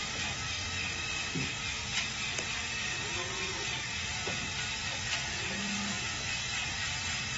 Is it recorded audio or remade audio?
recorded